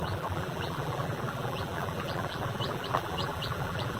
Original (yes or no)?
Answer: no